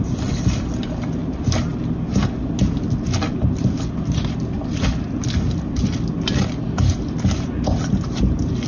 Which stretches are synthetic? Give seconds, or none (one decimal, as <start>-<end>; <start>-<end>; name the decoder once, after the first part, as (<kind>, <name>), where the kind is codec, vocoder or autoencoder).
none